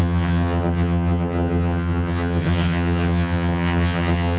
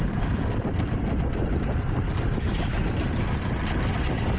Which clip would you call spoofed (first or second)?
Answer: first